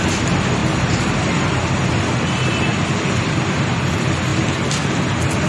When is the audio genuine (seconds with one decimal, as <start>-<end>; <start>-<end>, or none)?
0.0-5.5